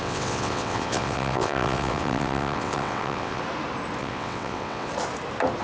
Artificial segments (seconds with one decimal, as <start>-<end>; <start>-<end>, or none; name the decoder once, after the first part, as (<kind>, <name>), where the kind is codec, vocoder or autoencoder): 0.0-3.4 (vocoder, WaveNeXt); 4.0-4.9